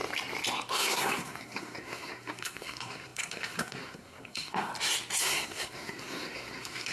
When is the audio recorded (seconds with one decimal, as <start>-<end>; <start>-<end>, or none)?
0.0-0.7; 4.7-5.2